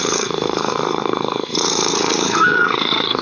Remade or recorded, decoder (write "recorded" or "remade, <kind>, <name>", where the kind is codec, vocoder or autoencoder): remade, codec, SNAC